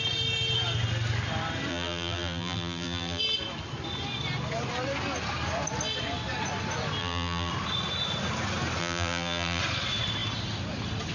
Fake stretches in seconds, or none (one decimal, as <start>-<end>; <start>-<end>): 1.7-3.2; 7.0-7.5; 8.8-9.6